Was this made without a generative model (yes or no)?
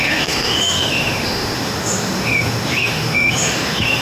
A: no